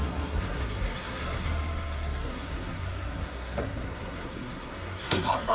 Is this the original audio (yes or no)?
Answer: no